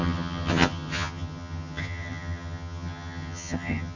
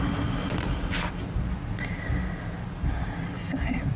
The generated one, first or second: first